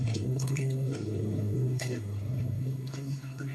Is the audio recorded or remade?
remade